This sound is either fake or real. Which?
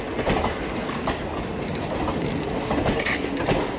real